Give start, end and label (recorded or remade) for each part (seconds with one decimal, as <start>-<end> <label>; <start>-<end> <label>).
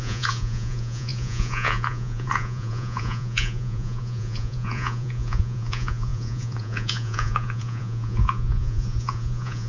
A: 0.0-9.7 remade